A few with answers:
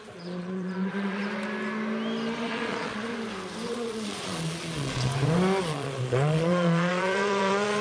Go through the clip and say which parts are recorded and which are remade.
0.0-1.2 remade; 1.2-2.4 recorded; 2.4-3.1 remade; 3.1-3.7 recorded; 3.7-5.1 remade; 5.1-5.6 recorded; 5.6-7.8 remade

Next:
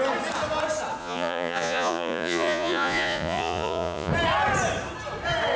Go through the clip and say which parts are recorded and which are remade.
0.0-1.0 recorded; 1.0-4.1 remade; 4.1-5.6 recorded

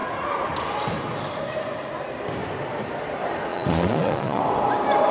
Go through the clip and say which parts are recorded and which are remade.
0.0-3.5 recorded; 3.5-4.4 remade; 4.4-5.1 recorded

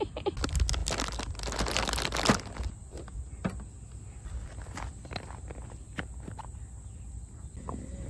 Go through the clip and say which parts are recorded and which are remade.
0.0-8.1 recorded

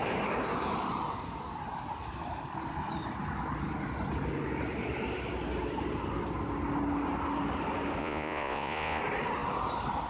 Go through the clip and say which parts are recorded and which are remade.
0.0-8.0 recorded; 8.0-9.0 remade; 9.0-10.1 recorded

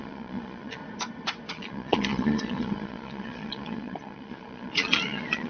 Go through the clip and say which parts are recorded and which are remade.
0.0-0.8 remade; 0.8-1.5 recorded; 1.5-5.5 remade

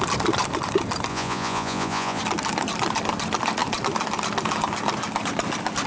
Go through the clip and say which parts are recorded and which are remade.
0.0-1.1 recorded; 1.1-2.2 remade; 2.2-5.9 recorded

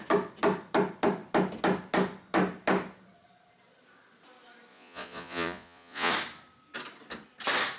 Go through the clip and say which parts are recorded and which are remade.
0.0-4.7 recorded; 4.7-6.1 remade; 6.1-7.8 recorded